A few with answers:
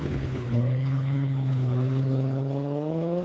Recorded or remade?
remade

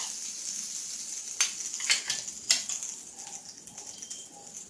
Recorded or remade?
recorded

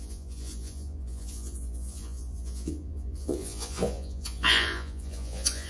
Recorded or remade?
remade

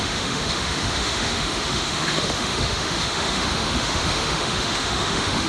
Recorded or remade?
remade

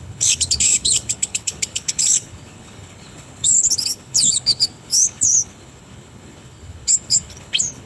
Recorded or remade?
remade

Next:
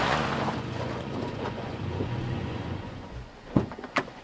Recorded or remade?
remade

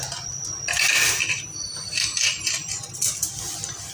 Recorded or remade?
recorded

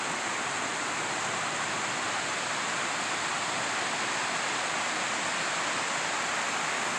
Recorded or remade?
recorded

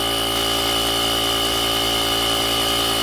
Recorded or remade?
recorded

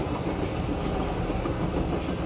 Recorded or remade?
recorded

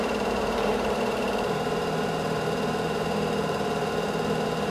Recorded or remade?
remade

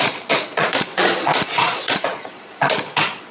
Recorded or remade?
remade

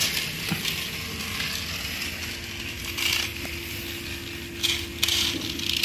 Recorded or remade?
recorded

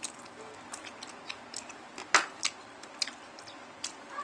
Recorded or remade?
recorded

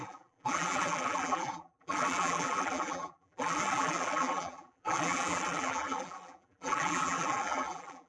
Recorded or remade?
remade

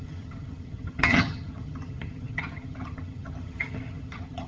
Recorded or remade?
remade